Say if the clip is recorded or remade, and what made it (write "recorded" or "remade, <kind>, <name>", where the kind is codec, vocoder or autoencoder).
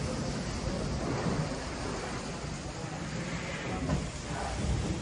recorded